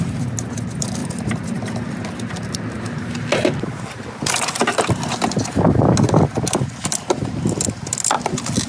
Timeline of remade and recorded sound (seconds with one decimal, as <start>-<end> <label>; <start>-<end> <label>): 0.0-8.7 recorded